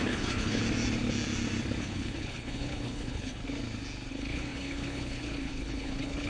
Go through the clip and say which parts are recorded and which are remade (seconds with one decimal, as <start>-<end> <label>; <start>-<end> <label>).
0.0-0.6 remade; 0.6-1.8 recorded; 1.8-3.4 remade; 3.4-4.1 recorded; 4.1-6.3 remade